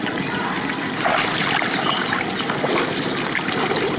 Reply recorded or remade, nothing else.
recorded